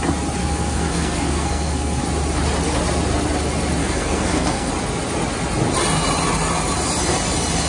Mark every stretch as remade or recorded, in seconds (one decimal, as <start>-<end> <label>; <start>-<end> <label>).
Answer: 0.0-0.4 recorded; 0.4-2.0 remade; 2.0-3.8 recorded; 3.8-4.7 remade; 4.7-7.7 recorded